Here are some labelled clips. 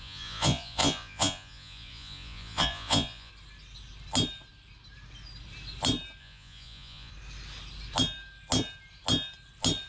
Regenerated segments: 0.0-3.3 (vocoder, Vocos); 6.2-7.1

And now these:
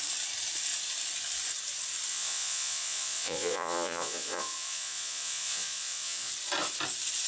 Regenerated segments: 2.1-6.3 (vocoder, Vocos)